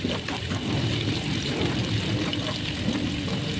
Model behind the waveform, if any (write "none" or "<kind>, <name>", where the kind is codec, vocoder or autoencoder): none